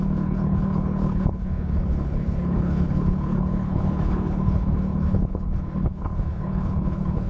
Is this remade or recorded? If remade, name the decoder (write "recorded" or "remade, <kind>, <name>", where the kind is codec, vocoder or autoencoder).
remade, codec, HILCodec